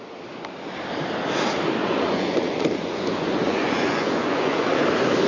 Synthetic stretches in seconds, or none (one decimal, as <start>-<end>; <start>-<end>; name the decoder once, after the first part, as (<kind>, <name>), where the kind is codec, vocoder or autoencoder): 1.8-4.8 (vocoder, Vocos)